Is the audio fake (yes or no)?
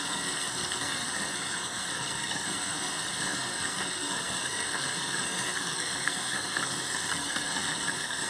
yes